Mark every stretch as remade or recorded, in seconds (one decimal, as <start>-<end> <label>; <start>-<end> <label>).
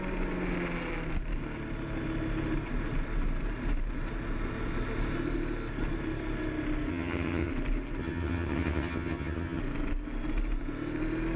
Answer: 0.0-6.9 recorded; 6.9-7.5 remade; 7.5-8.0 recorded; 8.0-9.6 remade; 9.6-11.4 recorded